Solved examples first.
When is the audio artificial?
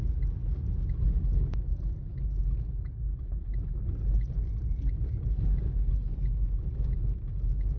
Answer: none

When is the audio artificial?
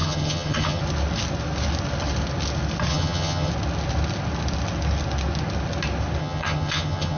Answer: 0.0-0.8 (vocoder, HiFi-GAN); 2.9-3.5; 6.2-7.2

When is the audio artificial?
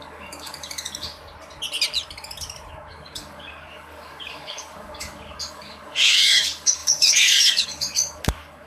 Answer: 0.0-1.1 (codec, DAC); 2.7-8.7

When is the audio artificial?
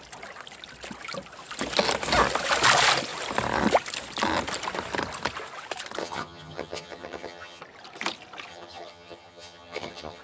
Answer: 6.0-7.6 (vocoder, HiFi-GAN); 8.5-10.2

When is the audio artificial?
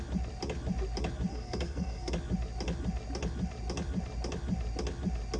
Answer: 1.3-2.1 (codec, SNAC)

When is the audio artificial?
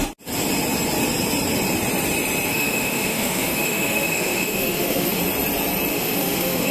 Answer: 2.5-5.2 (autoencoder, DAC-VAE); 5.9-6.7